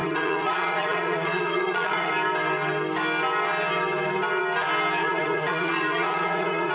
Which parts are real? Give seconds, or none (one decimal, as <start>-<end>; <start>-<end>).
2.1-5.0